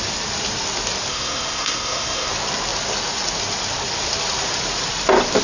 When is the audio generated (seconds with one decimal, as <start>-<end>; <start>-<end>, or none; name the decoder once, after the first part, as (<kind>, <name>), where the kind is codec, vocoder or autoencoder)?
1.1-2.3 (codec, SNAC)